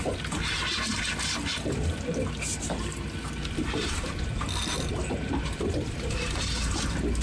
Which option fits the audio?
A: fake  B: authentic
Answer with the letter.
B